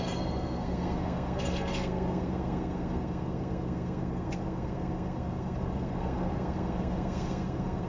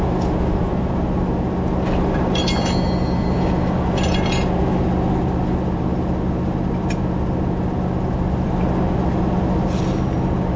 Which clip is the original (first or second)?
second